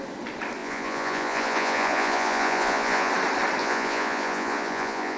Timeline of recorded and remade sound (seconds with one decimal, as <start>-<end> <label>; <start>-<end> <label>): 0.0-0.6 recorded; 0.6-3.1 remade; 3.1-3.6 recorded; 3.6-5.2 remade